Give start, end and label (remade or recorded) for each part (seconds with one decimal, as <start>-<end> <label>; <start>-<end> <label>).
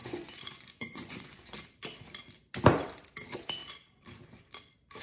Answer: 0.0-1.6 remade; 1.6-5.0 recorded